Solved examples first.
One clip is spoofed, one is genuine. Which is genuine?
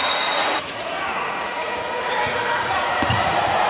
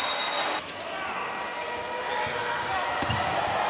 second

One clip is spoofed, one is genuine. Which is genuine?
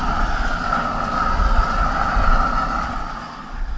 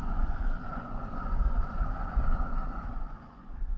first